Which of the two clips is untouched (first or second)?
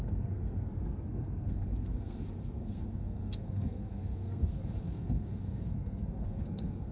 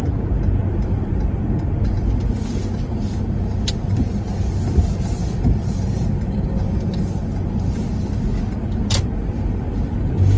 second